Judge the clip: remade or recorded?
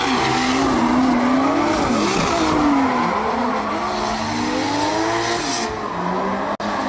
recorded